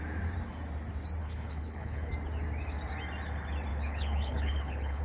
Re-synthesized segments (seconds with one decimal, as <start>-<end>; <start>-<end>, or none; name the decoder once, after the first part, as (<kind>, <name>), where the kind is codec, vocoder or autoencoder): 1.2-2.1 (codec, HILCodec); 3.7-5.0